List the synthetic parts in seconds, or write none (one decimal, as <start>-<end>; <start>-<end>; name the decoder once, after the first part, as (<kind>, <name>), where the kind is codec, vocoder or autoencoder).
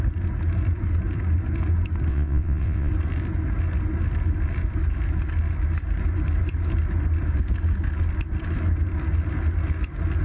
2.1-2.9 (vocoder, WaveNeXt)